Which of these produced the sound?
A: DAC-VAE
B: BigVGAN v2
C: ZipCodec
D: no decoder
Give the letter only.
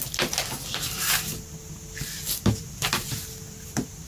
D